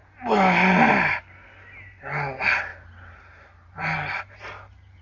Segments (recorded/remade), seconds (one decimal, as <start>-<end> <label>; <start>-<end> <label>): 0.0-2.7 recorded; 2.7-4.2 remade; 4.2-5.0 recorded